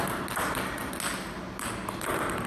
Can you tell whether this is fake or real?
real